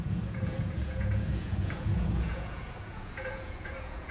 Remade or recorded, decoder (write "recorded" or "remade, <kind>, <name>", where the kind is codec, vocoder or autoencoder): remade, vocoder, Vocos